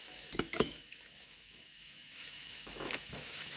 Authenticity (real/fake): fake